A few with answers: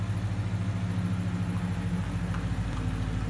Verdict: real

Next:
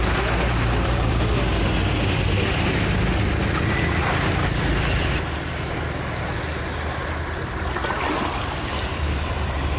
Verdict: real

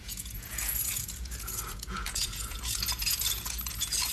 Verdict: fake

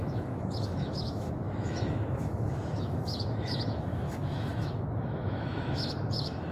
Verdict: fake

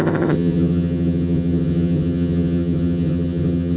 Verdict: fake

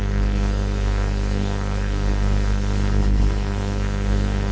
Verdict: fake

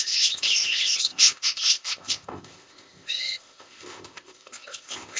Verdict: fake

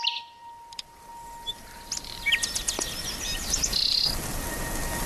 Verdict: real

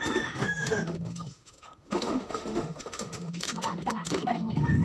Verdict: fake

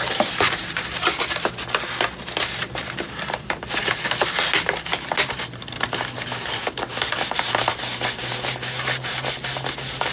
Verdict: real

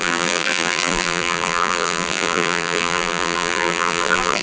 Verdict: fake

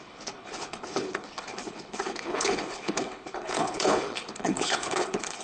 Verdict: fake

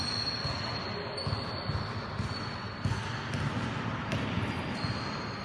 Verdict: real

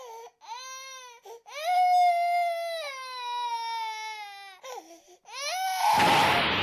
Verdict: real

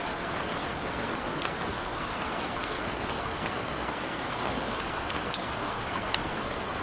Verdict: fake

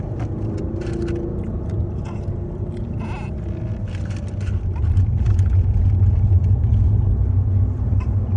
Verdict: real